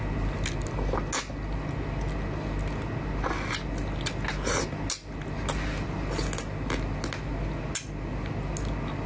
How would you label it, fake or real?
real